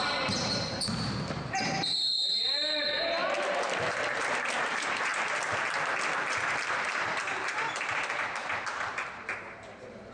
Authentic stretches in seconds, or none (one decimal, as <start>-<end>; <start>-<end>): 5.1-6.7